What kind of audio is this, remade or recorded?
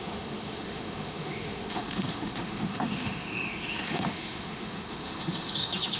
remade